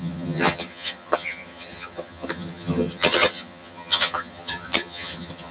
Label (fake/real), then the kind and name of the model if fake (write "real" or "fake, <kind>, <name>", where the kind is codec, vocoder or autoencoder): fake, vocoder, HiFi-GAN